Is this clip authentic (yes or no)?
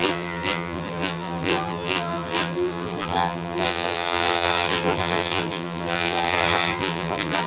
no